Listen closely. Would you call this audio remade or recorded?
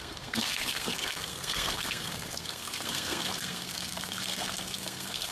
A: remade